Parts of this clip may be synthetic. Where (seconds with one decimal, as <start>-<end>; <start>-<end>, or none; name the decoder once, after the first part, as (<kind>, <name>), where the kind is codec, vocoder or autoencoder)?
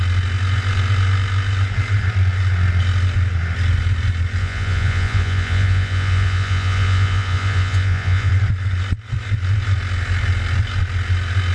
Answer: 4.4-8.3 (vocoder, Vocos)